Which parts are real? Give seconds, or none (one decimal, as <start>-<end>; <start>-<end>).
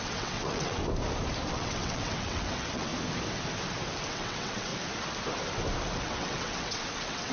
0.8-1.5; 2.9-4.0; 4.7-6.0